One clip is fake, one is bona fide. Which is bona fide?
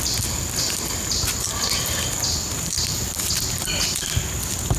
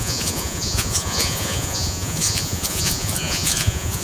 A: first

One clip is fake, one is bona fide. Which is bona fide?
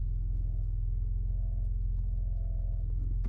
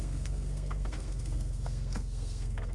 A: first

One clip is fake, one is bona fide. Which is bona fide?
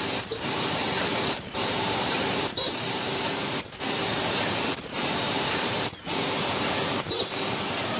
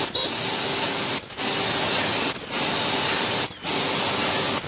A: second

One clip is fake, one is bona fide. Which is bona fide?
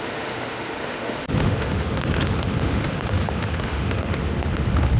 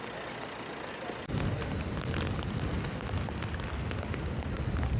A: second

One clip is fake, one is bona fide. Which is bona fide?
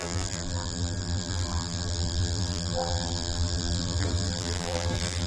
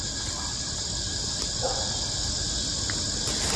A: second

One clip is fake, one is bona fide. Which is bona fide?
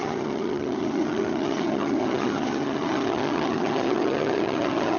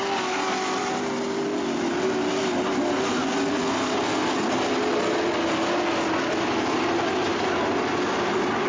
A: second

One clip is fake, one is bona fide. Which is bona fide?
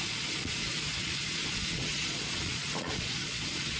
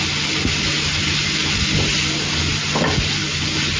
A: second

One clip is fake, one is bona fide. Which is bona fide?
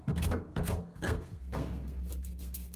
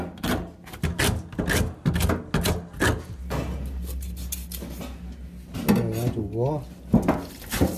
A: second